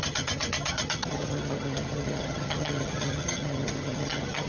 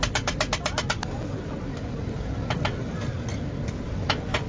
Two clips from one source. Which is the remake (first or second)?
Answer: first